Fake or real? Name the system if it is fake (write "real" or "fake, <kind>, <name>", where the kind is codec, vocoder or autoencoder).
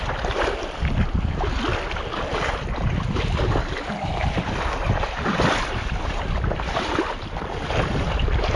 real